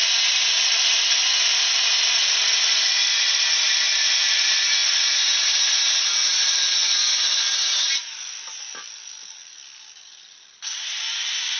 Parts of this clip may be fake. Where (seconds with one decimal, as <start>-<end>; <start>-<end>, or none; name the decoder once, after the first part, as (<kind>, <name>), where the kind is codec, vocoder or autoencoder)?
none